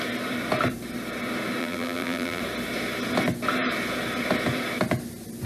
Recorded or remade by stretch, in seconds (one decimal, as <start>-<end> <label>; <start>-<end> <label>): 0.0-1.6 recorded; 1.6-2.4 remade; 2.4-5.5 recorded